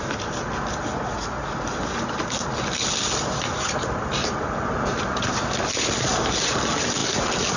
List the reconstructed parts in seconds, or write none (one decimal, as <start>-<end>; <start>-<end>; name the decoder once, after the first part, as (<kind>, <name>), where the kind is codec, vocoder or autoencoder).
none